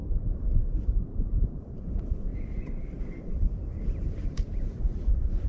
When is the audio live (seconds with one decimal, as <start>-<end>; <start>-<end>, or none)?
3.6-4.2